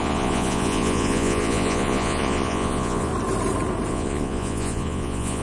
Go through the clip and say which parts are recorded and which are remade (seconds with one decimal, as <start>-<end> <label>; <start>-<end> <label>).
0.0-3.1 remade; 3.1-3.9 recorded; 3.9-5.4 remade